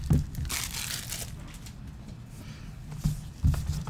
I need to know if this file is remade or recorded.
recorded